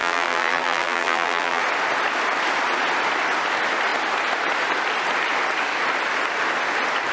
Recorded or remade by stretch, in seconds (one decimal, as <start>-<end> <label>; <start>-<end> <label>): 0.0-1.6 remade; 1.6-7.1 recorded

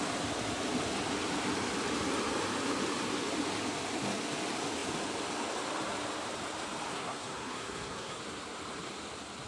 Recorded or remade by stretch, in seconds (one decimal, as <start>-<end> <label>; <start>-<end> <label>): 0.0-6.9 recorded; 6.9-8.2 remade; 8.2-9.5 recorded

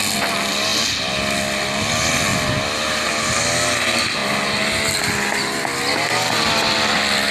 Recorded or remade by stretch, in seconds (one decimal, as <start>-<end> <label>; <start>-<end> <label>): 0.0-7.3 recorded

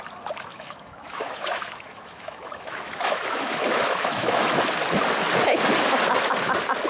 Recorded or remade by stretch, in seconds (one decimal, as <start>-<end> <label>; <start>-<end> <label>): 0.0-0.5 recorded; 0.5-4.6 remade; 4.6-6.9 recorded

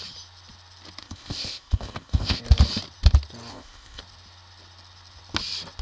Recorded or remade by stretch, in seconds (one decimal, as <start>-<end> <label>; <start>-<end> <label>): 0.0-1.0 recorded; 1.0-2.4 remade; 2.4-3.5 recorded; 3.5-4.0 remade; 4.0-5.8 recorded